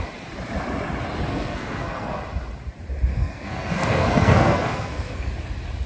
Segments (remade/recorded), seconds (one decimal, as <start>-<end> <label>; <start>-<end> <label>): 0.0-1.3 recorded; 1.3-2.2 remade; 2.2-3.1 recorded; 3.1-5.3 remade; 5.3-5.9 recorded